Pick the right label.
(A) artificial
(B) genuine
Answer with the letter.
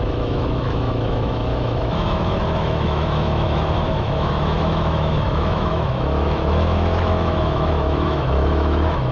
A